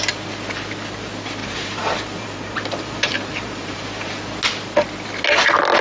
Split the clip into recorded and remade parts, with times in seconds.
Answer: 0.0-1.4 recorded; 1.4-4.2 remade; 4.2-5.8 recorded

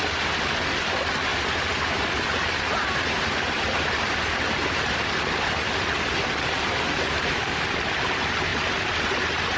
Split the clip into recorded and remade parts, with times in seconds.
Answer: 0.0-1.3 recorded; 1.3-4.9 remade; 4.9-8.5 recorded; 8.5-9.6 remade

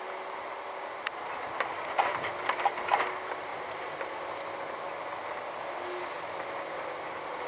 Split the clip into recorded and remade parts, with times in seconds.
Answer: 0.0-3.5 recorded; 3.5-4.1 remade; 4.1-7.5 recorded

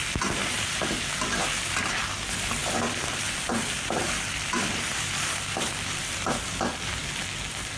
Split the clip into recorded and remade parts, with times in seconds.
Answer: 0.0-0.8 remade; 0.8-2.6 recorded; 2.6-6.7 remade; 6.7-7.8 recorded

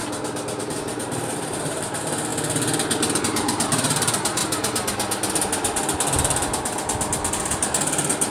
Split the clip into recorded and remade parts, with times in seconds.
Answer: 0.0-0.6 recorded; 0.6-2.3 remade; 2.3-3.2 recorded; 3.2-4.4 remade; 4.4-7.3 recorded; 7.3-8.3 remade

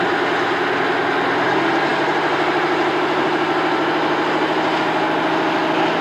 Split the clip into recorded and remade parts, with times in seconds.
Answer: 0.0-6.0 recorded

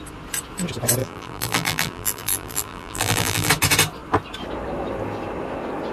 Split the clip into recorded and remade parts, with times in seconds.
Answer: 0.0-1.0 recorded; 1.0-3.5 remade; 3.5-5.9 recorded

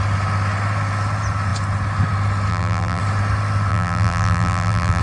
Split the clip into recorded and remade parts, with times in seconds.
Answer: 0.0-2.5 recorded; 2.5-3.0 remade; 3.0-3.7 recorded; 3.7-5.0 remade